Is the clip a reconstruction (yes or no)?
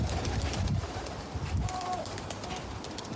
no